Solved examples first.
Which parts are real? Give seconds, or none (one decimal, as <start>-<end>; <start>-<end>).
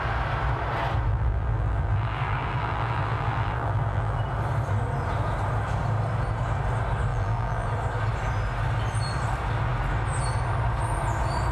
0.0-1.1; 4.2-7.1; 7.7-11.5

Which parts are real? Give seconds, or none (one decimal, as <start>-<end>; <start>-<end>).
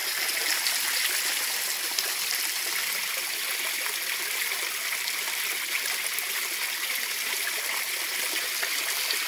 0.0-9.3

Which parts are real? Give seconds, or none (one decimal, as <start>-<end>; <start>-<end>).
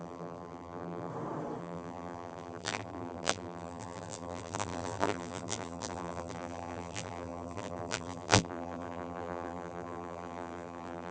1.1-1.6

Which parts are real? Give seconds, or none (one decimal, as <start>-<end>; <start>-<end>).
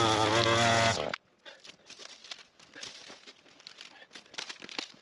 0.0-2.2; 2.7-5.0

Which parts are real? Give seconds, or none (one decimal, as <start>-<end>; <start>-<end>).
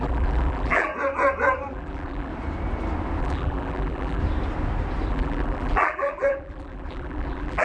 0.9-1.7; 2.3-3.2; 4.2-5.1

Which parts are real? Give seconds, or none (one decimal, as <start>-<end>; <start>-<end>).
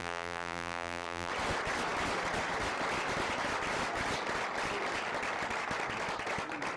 1.3-6.8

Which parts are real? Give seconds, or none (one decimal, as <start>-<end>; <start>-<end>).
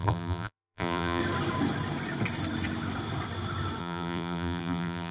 1.2-3.8